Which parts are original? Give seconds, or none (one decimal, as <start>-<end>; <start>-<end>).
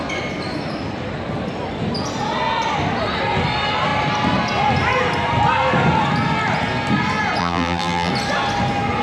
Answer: 0.0-7.4; 8.1-9.0